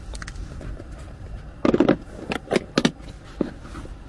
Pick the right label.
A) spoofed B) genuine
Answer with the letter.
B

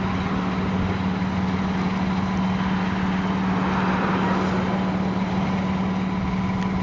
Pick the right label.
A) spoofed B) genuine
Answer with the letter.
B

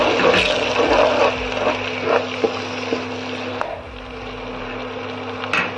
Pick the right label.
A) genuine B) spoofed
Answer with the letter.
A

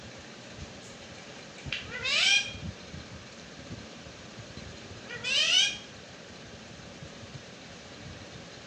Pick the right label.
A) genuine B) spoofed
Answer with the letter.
B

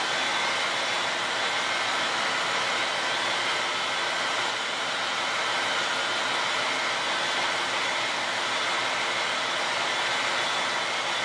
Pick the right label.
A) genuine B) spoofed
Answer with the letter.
A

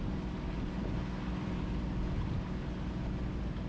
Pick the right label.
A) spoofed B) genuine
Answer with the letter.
B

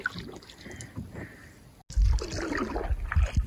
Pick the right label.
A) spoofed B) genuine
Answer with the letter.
B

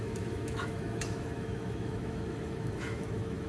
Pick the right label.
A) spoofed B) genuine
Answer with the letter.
A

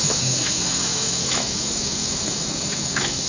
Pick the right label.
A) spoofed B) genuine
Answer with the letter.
A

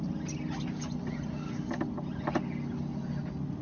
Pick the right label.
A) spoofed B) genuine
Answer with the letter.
B